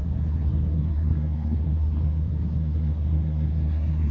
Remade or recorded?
remade